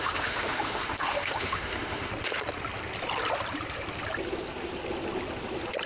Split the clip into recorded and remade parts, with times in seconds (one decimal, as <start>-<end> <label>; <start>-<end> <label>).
0.0-2.1 remade; 2.1-5.9 recorded